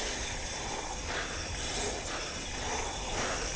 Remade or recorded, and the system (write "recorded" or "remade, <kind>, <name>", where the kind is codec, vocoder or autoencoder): recorded